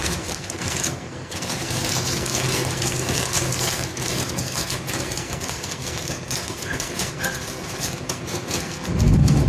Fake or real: fake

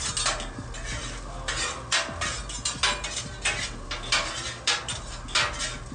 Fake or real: real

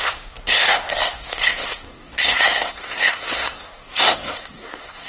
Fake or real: fake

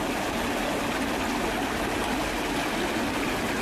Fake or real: real